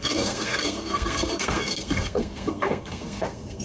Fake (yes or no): yes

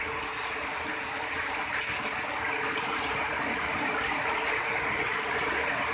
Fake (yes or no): no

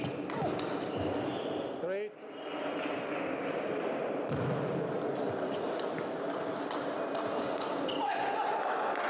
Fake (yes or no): no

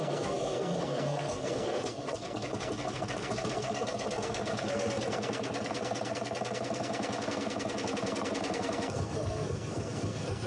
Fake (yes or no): yes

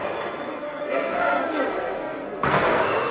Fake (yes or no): yes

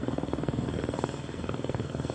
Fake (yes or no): yes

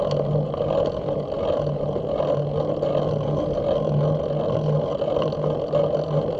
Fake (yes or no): no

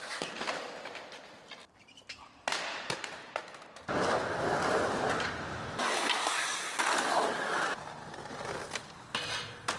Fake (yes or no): no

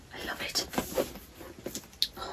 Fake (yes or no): no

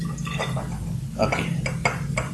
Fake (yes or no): no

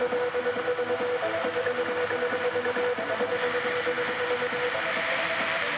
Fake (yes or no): no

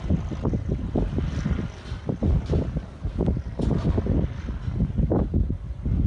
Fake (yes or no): no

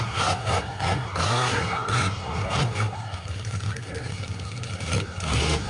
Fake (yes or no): yes